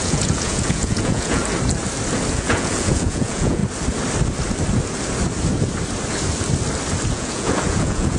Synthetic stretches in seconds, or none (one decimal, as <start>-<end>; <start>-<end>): 0.0-1.4; 2.3-3.6; 7.1-8.2